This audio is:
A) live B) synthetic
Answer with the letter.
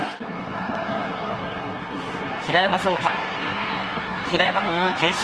B